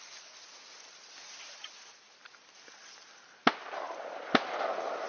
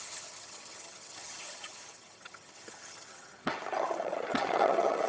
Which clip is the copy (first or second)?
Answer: second